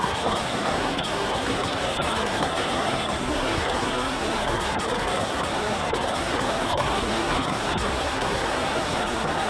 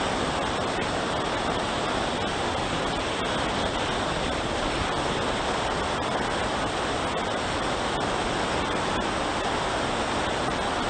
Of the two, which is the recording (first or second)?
second